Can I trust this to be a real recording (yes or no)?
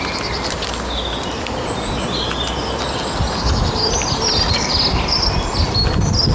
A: yes